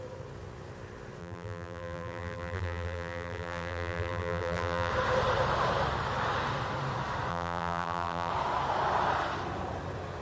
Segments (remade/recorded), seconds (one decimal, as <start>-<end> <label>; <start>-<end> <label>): 0.0-1.2 recorded; 1.2-4.9 remade; 4.9-7.3 recorded; 7.3-8.3 remade; 8.3-10.2 recorded